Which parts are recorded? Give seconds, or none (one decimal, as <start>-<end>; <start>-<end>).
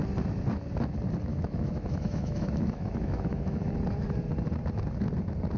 0.0-1.3; 3.7-5.6